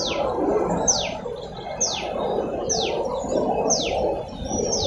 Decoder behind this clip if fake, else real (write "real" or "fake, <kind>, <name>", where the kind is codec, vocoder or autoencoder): real